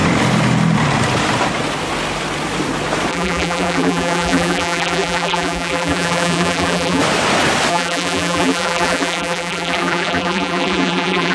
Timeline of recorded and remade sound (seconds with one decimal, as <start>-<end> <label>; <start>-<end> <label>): 0.0-3.1 recorded; 3.1-7.0 remade; 7.0-7.7 recorded; 7.7-11.3 remade